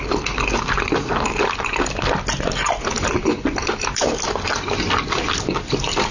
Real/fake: real